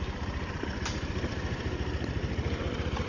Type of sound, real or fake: real